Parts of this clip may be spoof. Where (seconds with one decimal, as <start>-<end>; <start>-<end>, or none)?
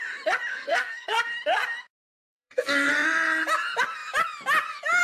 0.5-1.2; 2.2-2.9